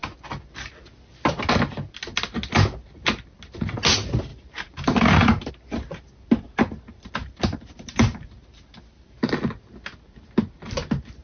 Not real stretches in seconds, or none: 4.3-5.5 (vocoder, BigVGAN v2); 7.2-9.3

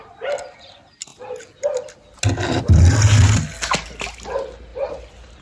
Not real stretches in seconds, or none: 1.1-2.2 (vocoder, BigVGAN v2); 4.7-5.4

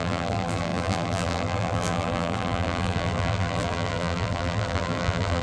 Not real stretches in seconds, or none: 0.0-5.4 (vocoder, BigVGAN v2)

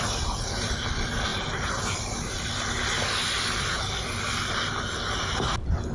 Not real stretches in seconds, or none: none